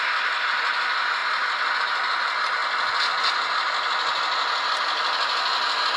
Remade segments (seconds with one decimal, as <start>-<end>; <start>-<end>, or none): none